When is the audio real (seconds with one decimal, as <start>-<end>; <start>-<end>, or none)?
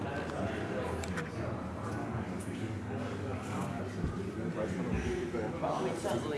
0.0-2.0; 3.8-6.4